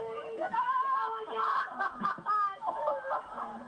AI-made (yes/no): yes